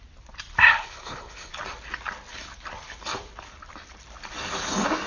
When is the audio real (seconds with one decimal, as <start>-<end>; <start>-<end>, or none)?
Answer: 0.0-0.8; 1.5-5.1